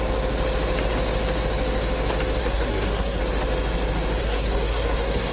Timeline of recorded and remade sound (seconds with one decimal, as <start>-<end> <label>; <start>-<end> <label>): 0.0-2.4 recorded; 2.4-3.2 remade; 3.2-4.2 recorded; 4.2-5.3 remade